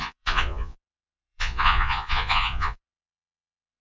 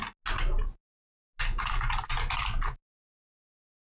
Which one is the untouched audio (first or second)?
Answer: second